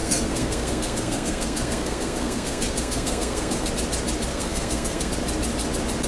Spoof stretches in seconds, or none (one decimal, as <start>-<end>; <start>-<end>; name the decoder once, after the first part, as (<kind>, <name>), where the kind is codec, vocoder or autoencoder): 0.0-3.7 (codec, SNAC); 4.3-5.1